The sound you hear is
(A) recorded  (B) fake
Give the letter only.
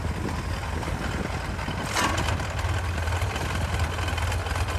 A